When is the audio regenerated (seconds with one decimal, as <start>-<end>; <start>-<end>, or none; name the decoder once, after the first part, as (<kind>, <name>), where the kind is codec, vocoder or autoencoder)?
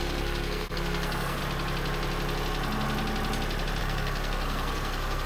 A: 0.0-1.4 (codec, SNAC); 3.8-5.3